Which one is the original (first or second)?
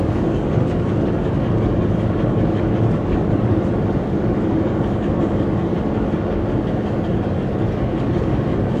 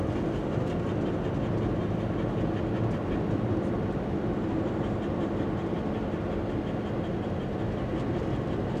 second